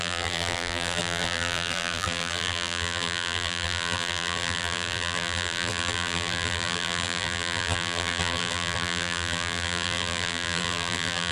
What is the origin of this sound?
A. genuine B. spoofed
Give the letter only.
B